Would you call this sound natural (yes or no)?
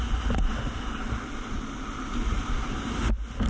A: yes